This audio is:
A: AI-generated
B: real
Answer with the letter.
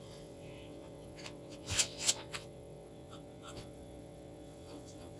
A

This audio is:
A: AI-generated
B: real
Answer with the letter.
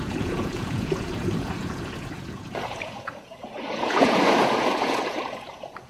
A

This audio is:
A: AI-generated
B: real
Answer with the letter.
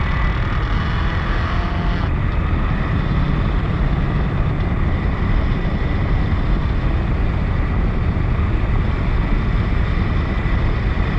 B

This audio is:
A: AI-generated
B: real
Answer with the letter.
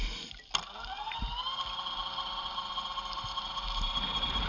B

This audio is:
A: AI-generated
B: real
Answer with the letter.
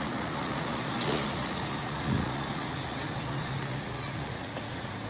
A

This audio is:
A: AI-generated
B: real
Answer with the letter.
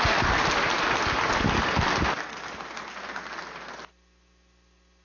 B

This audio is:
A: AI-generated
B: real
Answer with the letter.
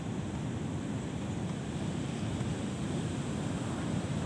B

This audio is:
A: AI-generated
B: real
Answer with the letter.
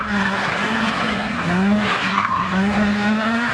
A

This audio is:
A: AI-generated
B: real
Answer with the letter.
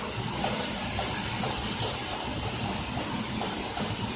B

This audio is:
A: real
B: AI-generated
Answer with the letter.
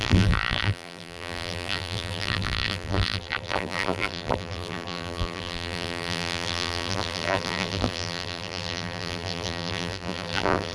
B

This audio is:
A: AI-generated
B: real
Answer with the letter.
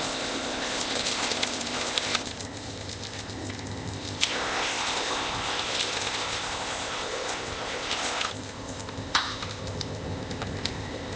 A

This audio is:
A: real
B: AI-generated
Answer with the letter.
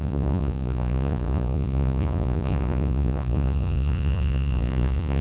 B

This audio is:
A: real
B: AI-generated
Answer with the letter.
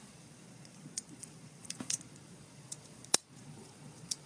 B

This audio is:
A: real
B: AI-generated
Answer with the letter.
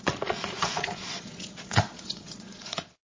B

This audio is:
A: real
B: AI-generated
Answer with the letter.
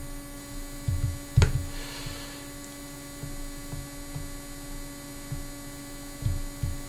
A